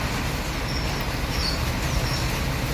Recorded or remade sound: recorded